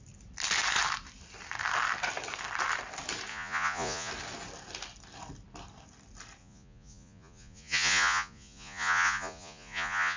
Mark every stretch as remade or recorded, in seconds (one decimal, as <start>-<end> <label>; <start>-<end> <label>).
0.0-3.3 recorded; 3.3-4.1 remade; 4.1-6.4 recorded; 6.4-10.2 remade